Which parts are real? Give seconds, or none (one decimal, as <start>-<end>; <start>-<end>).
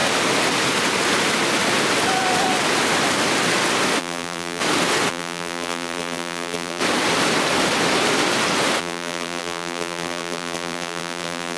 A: 0.0-4.0; 4.6-5.1; 6.8-8.8